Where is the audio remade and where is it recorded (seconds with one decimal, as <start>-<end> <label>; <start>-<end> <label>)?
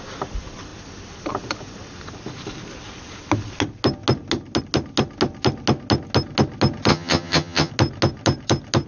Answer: 0.0-6.9 recorded; 6.9-7.7 remade; 7.7-8.9 recorded